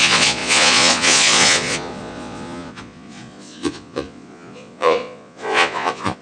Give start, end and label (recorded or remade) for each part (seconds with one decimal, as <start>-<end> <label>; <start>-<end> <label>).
0.0-6.2 remade